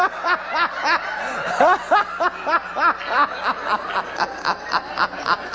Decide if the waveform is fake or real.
real